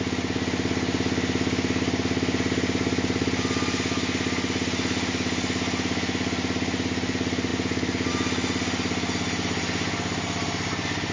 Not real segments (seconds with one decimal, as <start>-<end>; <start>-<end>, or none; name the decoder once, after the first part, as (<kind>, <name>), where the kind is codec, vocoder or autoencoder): none

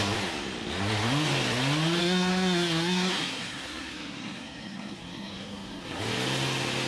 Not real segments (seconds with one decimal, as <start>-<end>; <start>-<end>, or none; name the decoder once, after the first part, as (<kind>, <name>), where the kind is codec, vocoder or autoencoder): 2.0-6.0 (codec, SNAC)

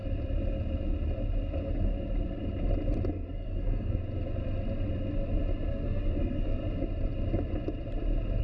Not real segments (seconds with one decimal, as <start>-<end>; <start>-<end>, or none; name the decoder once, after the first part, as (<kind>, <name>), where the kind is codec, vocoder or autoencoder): 3.1-4.0 (codec, SNAC); 5.7-6.6

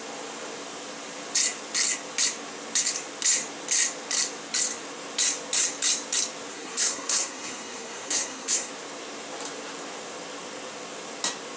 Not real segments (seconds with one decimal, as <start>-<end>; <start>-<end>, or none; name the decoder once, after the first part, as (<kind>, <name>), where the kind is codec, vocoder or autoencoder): 6.5-8.7 (codec, SNAC)

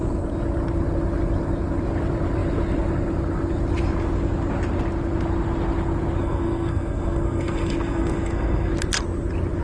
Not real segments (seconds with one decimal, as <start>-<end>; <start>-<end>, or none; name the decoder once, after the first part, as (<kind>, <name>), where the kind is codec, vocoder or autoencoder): 6.2-8.7 (codec, SNAC)